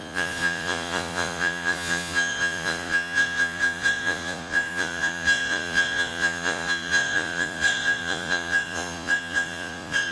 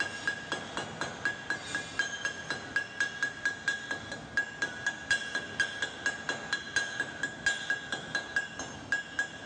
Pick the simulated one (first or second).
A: first